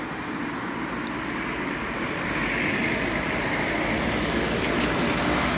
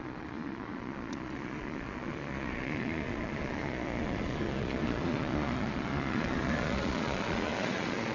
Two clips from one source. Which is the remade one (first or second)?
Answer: second